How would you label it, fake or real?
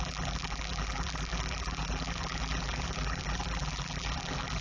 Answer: fake